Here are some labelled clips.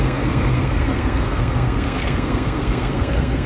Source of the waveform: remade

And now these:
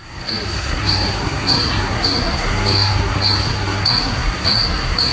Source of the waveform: remade